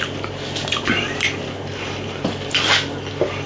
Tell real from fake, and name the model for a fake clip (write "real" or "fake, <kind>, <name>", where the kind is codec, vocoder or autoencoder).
real